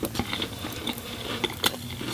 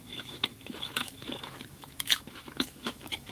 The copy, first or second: second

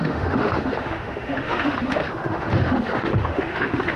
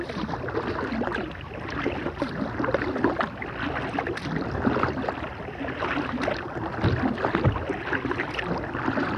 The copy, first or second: first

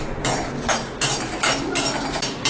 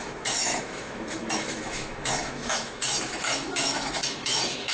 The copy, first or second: second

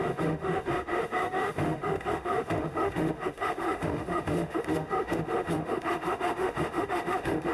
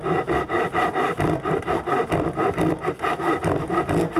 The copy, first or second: first